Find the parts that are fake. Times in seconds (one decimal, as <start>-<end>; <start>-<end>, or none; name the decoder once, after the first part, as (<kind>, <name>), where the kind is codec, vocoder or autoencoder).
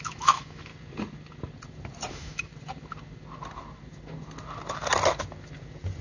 0.0-0.7 (autoencoder, DAC-VAE); 2.1-2.5